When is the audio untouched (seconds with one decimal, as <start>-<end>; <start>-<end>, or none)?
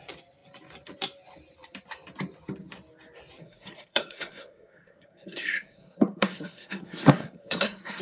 0.0-3.4